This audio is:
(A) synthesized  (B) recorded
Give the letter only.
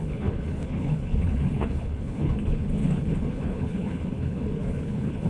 A